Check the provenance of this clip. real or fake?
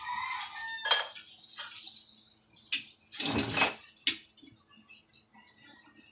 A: real